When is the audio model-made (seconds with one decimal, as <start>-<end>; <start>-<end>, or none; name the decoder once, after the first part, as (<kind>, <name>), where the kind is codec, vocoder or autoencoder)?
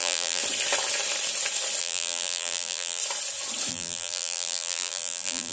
0.0-0.4 (vocoder, BigVGAN v2); 1.8-3.0; 3.7-5.5